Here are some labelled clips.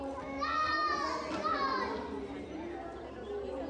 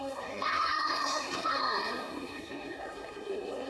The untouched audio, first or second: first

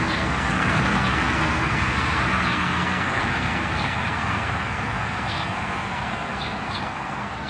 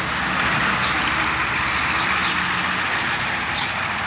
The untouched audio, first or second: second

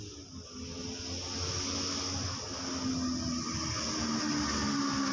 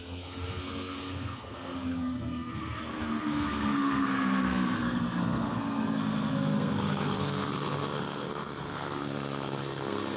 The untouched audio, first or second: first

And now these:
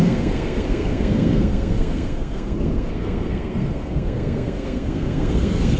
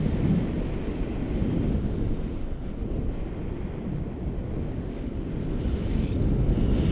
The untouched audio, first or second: second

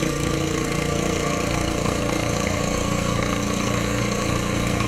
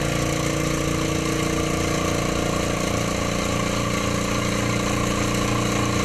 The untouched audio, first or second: second